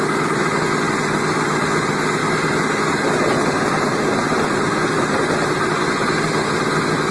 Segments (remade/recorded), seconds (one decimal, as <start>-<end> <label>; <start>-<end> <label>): 0.0-2.2 recorded; 2.2-2.7 remade; 2.7-7.1 recorded